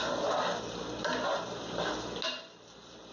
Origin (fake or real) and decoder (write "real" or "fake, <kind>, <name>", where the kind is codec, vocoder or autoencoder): real